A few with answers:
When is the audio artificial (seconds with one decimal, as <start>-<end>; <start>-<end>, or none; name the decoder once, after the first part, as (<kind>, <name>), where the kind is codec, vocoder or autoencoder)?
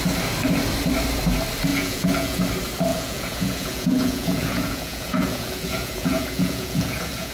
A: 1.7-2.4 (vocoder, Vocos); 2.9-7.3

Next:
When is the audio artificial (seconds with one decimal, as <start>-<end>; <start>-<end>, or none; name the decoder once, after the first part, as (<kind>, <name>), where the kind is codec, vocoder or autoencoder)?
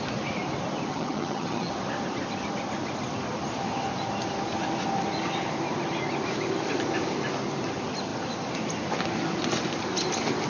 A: 0.9-1.7 (vocoder, HiFi-GAN)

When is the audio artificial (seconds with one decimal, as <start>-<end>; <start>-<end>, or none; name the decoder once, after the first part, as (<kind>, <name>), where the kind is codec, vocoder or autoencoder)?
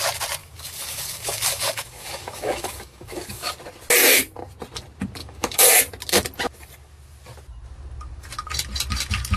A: 0.4-3.5 (codec, DAC); 5.2-5.8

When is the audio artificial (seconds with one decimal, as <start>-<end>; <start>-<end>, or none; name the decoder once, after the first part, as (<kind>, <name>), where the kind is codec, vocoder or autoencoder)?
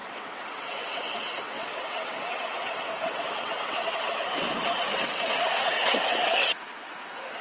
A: 0.0-4.1 (vocoder, WaveNeXt); 5.0-6.6